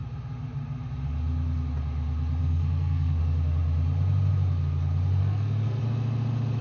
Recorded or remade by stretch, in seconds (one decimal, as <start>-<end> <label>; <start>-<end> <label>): 0.0-2.4 recorded; 2.4-3.2 remade; 3.2-5.2 recorded; 5.2-5.8 remade; 5.8-6.6 recorded